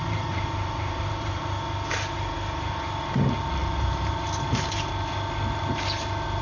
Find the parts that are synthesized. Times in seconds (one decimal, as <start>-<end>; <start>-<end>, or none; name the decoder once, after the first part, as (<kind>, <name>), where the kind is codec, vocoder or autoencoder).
0.0-1.4 (vocoder, BigVGAN v2); 3.6-4.9